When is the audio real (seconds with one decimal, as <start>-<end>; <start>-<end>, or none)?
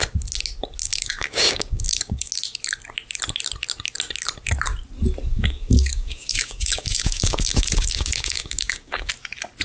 0.0-0.8; 2.3-5.3; 9.1-9.6